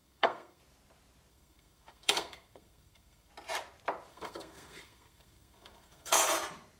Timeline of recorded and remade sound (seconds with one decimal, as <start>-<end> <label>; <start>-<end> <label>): 0.0-0.6 remade; 0.6-1.3 recorded; 1.3-3.3 remade; 3.3-4.1 recorded; 4.1-6.2 remade; 6.2-6.8 recorded